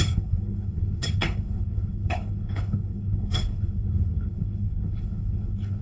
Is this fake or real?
fake